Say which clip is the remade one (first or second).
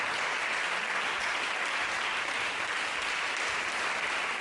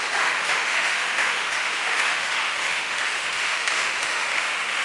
second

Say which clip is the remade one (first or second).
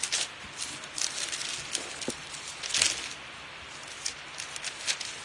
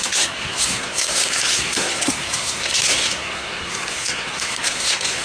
second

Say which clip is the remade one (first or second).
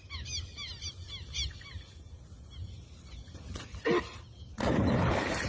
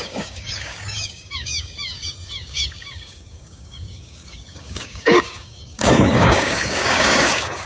second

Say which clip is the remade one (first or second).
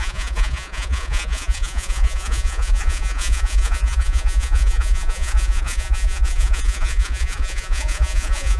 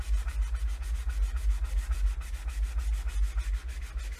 first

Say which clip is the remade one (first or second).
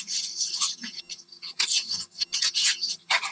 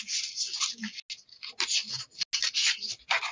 first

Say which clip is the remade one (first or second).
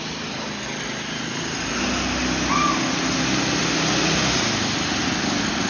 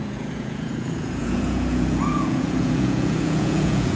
second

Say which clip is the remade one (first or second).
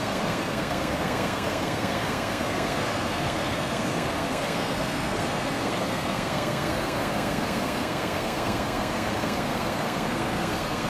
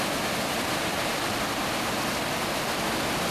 first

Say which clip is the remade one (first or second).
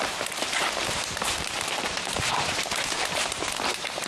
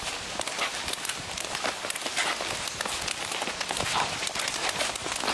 first